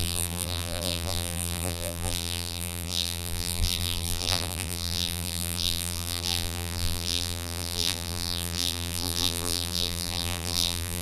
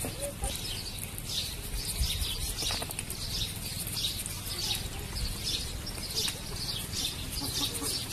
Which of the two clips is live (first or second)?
second